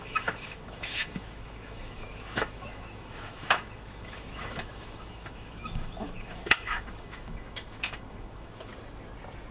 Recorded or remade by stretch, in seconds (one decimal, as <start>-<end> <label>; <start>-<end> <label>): 0.0-8.7 remade; 8.7-9.5 recorded